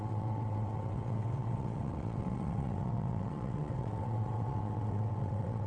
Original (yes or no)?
no